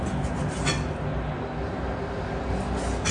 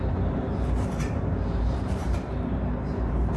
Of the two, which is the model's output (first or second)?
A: second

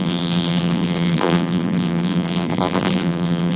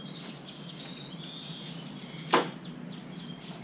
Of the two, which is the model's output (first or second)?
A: first